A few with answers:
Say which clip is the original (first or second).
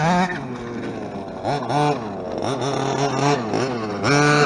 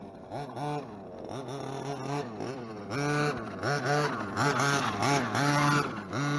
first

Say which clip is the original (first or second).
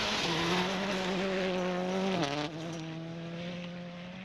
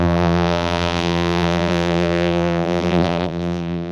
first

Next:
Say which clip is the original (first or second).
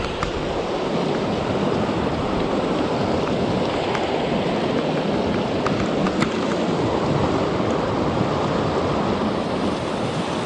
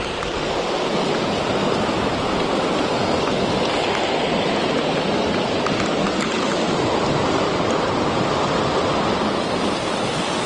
second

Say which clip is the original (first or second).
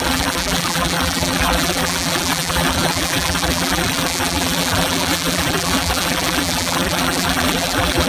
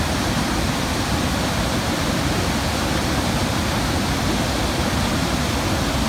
second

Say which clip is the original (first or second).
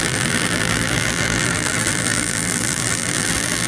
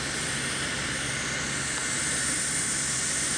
second